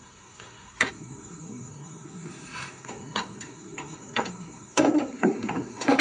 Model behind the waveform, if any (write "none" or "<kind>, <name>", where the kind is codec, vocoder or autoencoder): codec, SNAC